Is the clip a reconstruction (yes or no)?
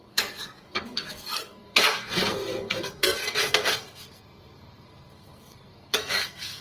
yes